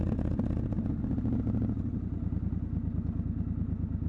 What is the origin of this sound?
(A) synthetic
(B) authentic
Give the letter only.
B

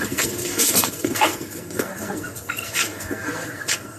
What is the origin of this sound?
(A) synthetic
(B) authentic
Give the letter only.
A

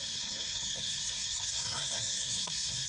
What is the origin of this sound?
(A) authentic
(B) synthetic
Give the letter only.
B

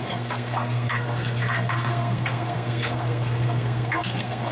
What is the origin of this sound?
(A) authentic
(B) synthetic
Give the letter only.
B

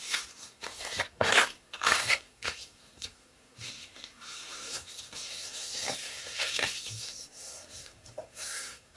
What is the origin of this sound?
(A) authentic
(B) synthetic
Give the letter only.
B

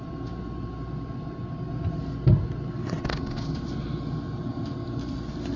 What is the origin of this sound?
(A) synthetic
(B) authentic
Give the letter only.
B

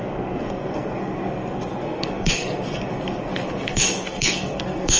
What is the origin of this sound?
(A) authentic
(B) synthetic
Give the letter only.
B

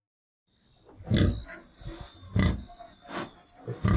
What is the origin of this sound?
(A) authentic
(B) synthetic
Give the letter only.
A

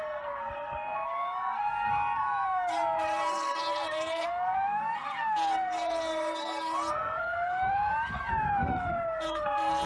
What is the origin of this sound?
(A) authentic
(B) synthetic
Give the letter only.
B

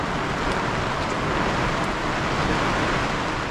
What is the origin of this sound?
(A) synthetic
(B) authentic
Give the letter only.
B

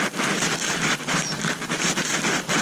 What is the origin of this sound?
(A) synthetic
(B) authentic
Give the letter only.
B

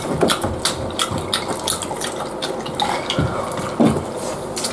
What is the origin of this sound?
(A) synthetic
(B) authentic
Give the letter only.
B